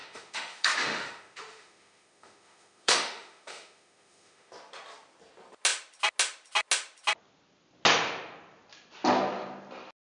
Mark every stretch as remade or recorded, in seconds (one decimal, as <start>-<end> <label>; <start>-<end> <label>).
0.0-4.5 remade; 4.5-10.0 recorded